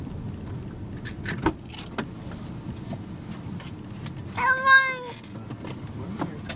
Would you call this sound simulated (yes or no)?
no